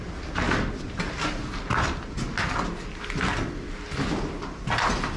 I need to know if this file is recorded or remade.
recorded